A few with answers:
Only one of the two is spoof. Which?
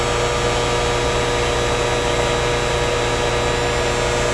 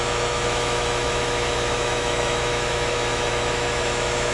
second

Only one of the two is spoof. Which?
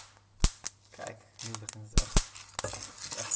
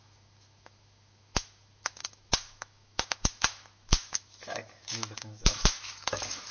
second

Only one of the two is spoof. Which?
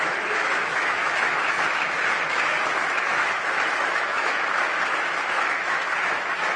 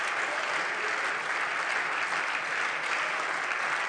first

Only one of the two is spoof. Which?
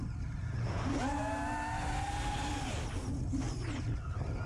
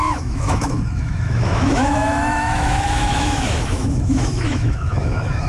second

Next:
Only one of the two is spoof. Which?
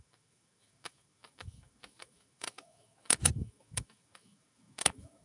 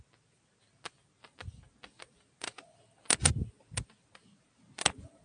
first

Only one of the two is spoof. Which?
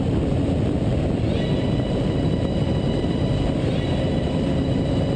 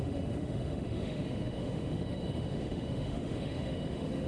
second